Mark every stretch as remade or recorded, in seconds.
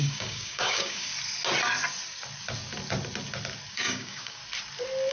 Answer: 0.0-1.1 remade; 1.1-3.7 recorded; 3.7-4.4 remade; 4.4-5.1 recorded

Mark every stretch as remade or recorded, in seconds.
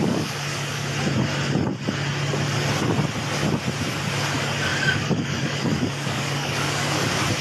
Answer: 0.0-0.9 remade; 0.9-4.3 recorded; 4.3-7.4 remade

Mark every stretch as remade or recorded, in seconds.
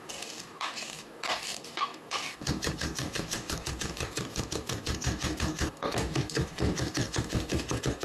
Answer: 0.0-8.0 remade